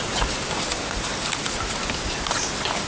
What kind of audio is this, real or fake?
real